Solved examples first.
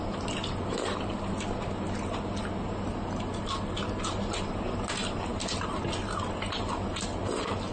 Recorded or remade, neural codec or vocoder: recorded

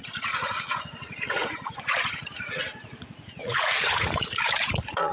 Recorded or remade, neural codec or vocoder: remade, vocoder, Vocos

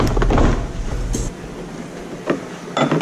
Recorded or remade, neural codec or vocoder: recorded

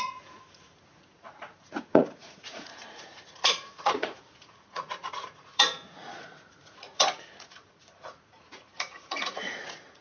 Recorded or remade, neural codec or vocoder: remade, vocoder, Vocos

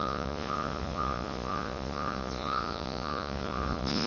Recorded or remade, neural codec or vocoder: remade, vocoder, Vocos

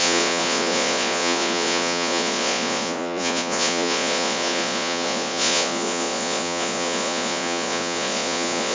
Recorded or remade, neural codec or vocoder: remade, vocoder, Vocos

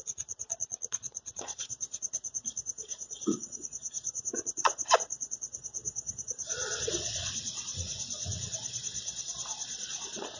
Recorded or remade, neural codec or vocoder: remade, vocoder, Vocos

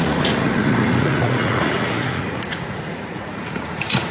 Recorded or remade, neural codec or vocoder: remade, vocoder, Vocos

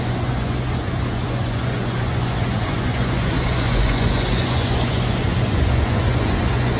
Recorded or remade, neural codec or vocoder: remade, vocoder, Vocos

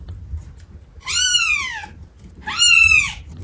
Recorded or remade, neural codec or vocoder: recorded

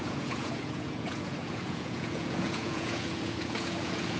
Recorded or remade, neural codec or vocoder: remade, vocoder, Vocos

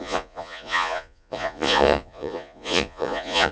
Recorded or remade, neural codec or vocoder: remade, vocoder, Vocos